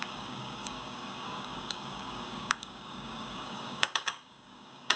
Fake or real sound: fake